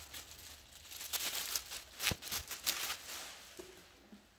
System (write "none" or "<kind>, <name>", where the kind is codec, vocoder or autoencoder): none